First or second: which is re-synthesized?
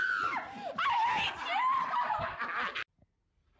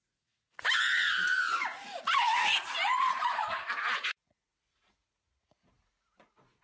second